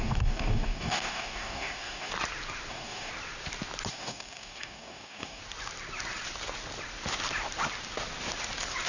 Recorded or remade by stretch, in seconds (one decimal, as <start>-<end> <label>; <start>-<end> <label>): 0.0-2.1 remade; 2.1-2.7 recorded; 2.7-3.1 remade; 3.1-3.9 recorded; 3.9-5.4 remade; 5.4-8.9 recorded